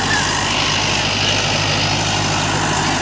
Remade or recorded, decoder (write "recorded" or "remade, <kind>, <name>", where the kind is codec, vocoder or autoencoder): recorded